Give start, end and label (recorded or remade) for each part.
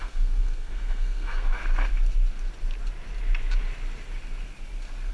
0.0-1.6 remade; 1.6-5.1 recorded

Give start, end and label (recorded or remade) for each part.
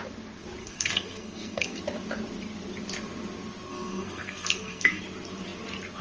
0.0-0.6 recorded; 0.6-1.8 remade; 1.8-3.7 recorded; 3.7-5.0 remade; 5.0-6.0 recorded